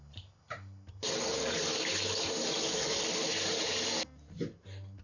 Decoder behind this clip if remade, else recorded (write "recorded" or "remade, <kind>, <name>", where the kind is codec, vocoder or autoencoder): recorded